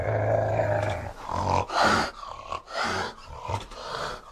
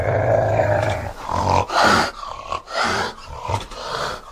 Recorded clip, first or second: first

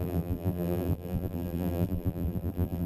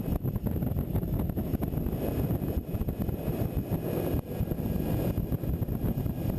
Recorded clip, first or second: second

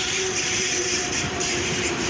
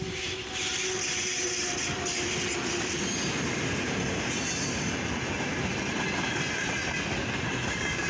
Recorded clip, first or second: second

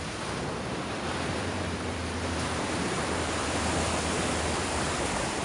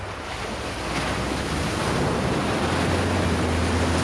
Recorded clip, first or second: second